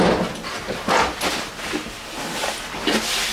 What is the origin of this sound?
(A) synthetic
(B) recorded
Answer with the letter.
B